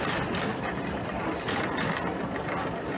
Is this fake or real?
real